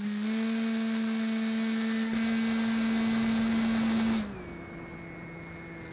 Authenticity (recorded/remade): recorded